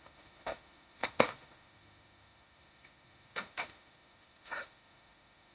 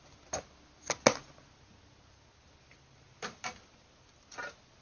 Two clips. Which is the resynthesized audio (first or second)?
first